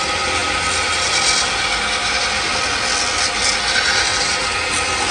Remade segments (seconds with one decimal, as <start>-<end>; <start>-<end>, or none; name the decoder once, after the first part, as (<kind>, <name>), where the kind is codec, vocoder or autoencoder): none